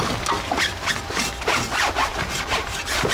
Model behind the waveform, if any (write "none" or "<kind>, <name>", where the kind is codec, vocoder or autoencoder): none